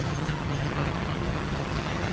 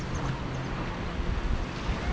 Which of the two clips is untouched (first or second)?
second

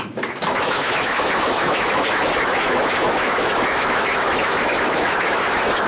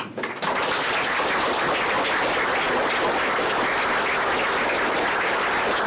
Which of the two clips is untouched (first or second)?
second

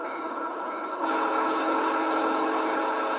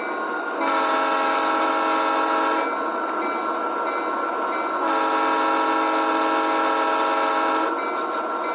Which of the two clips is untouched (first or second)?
second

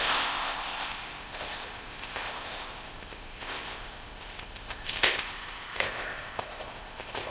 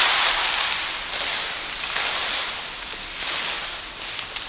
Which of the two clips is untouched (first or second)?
second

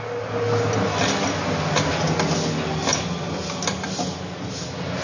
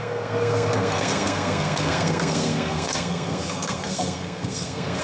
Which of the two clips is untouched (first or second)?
first